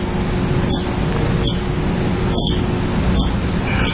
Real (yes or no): yes